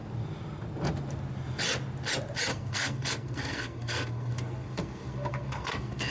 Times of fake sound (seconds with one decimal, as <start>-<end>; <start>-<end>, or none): 2.5-6.1

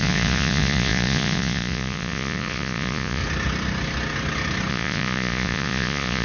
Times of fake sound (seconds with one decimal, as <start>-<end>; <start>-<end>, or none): 0.0-3.2; 4.7-6.2

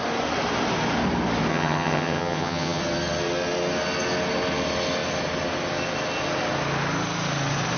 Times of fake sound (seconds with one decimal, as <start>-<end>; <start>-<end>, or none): 1.5-2.8

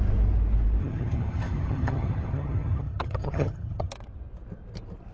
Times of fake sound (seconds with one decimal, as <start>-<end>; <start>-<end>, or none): 0.8-3.9

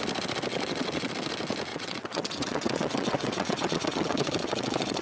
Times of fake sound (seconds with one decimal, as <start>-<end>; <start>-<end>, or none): 0.5-1.1; 1.7-5.0

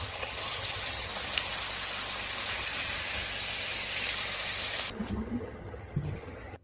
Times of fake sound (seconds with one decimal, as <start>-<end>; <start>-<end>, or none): 0.0-1.1; 5.1-6.6

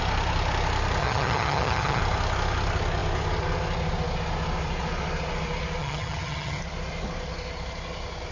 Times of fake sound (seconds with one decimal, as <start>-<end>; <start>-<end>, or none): 1.0-2.0; 5.8-6.6

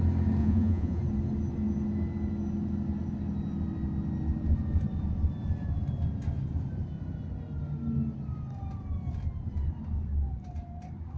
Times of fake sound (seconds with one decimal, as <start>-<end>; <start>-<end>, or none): 0.4-1.0